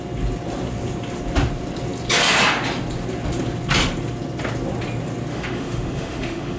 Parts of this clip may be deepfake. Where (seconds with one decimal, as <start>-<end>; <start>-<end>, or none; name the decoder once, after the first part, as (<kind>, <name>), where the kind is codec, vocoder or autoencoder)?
5.3-6.6 (autoencoder, DAC-VAE)